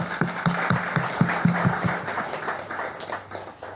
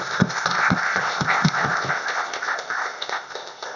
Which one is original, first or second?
first